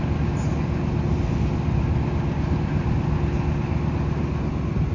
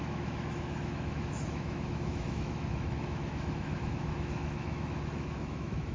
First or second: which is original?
first